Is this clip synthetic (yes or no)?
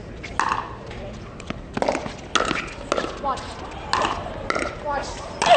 no